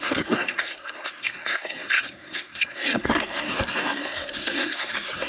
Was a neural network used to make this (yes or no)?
yes